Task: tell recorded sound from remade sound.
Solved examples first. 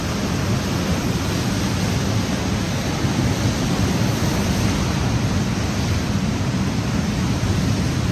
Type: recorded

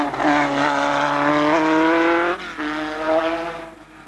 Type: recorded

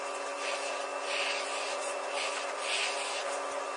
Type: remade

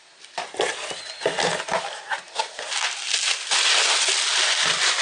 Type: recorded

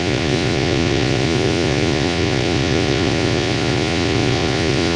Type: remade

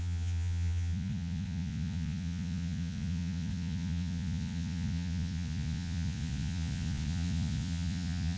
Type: remade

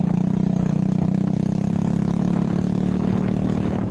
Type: recorded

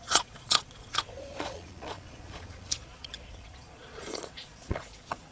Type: remade